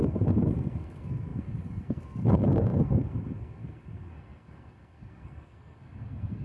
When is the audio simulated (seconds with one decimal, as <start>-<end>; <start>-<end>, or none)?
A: 0.0-6.4